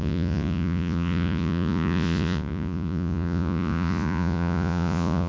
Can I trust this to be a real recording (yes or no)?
no